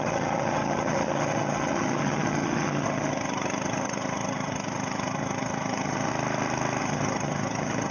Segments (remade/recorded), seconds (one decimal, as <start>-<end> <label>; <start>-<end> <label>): 0.0-6.1 remade; 6.1-6.8 recorded; 6.8-7.9 remade